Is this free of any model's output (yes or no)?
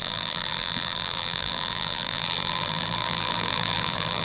no